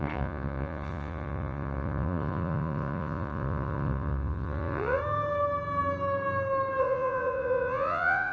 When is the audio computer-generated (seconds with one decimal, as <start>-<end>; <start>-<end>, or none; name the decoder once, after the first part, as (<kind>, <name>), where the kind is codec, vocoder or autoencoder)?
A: 0.0-5.0 (vocoder, Vocos); 6.8-8.3